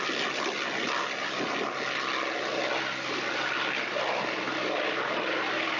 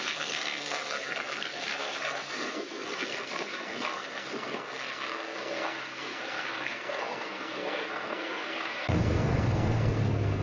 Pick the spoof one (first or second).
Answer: second